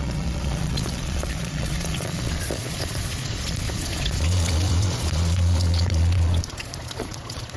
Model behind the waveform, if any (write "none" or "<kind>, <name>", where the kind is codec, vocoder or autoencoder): vocoder, Vocos